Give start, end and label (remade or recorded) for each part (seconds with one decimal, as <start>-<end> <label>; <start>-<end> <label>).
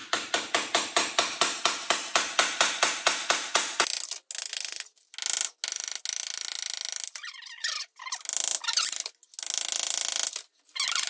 0.0-11.1 recorded